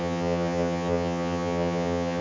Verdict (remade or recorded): remade